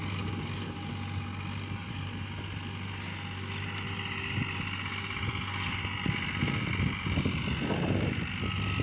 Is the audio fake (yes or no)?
no